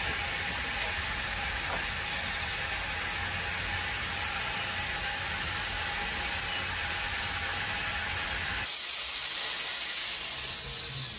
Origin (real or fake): real